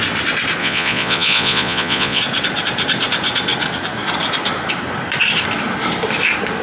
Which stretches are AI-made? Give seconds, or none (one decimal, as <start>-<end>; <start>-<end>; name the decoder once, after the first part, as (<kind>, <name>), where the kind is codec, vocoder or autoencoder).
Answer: 0.6-2.2 (vocoder, Vocos)